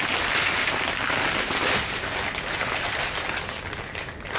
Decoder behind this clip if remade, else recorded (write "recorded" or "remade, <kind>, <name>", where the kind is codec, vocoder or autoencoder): recorded